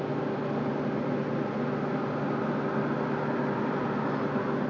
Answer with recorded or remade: recorded